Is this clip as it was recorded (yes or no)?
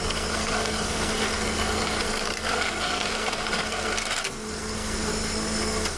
no